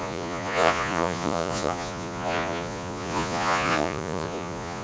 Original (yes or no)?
no